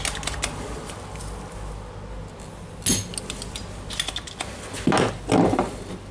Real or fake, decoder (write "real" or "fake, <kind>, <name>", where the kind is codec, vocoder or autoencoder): real